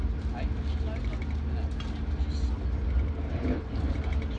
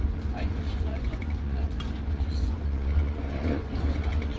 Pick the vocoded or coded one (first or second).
second